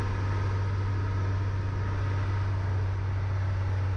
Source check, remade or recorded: recorded